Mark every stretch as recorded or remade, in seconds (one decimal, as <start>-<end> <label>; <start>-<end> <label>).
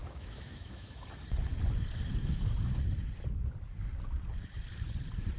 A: 0.0-1.0 remade; 1.0-5.4 recorded